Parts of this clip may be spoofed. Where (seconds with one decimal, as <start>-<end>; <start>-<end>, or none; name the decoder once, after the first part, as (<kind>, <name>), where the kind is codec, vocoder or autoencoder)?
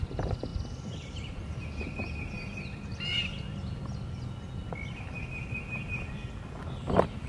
none